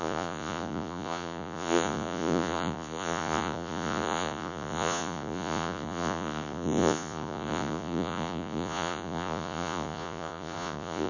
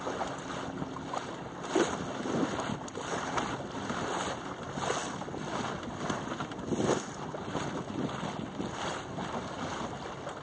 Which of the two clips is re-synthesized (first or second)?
first